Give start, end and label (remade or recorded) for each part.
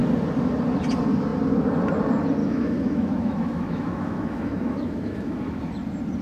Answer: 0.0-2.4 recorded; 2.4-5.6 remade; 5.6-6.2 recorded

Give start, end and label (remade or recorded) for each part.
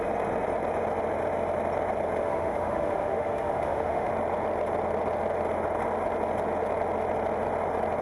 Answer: 0.0-2.2 recorded; 2.2-4.1 remade; 4.1-8.0 recorded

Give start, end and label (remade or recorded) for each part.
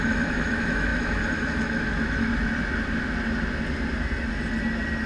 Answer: 0.0-2.3 remade; 2.3-5.1 recorded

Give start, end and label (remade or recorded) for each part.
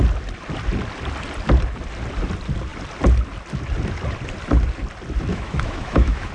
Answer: 0.0-5.3 recorded; 5.3-6.3 remade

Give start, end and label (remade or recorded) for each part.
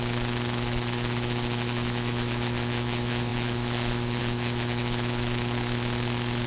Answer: 0.0-6.5 remade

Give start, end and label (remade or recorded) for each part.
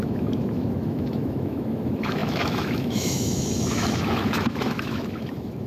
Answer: 0.0-5.7 remade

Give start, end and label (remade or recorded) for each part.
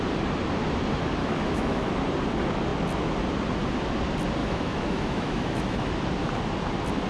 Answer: 0.0-1.2 recorded; 1.2-1.9 remade; 1.9-4.4 recorded; 4.4-5.9 remade; 5.9-7.1 recorded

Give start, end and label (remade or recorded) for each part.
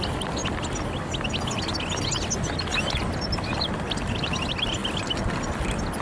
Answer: 0.0-6.0 recorded